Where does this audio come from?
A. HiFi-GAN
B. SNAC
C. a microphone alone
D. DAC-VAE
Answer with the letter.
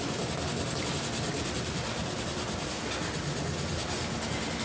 C